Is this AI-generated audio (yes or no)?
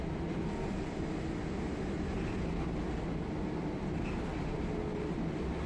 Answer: no